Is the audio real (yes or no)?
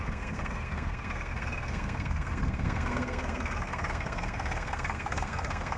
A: no